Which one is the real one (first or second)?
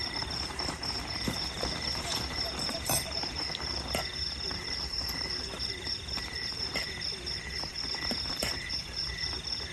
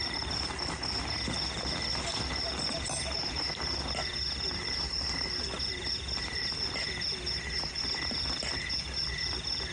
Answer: second